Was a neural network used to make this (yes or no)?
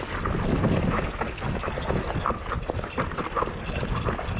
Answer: no